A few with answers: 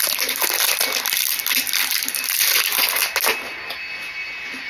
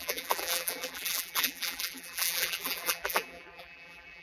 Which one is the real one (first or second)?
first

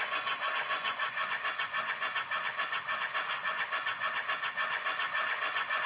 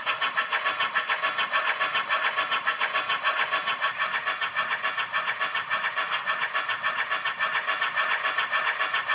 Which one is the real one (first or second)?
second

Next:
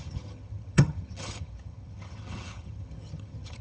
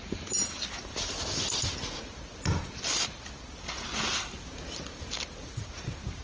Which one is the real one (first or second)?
second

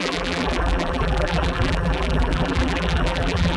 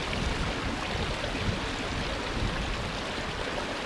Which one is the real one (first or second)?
second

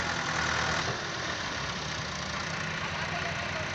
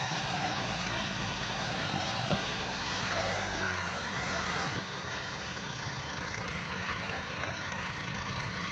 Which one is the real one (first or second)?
first